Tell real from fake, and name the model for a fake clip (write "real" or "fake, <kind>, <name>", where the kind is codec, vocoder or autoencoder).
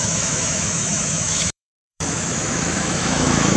fake, autoencoder, DAC-VAE